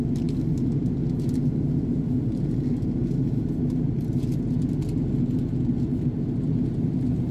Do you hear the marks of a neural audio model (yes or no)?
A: no